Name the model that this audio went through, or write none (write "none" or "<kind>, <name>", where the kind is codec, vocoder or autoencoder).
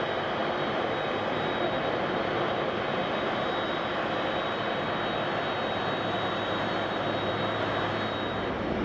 none